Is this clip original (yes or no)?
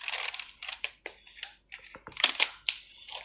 yes